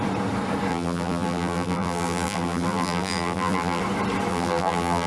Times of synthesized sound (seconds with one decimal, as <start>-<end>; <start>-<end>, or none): 0.7-3.8; 4.3-5.1